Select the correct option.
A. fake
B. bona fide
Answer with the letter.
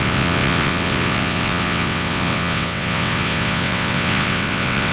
A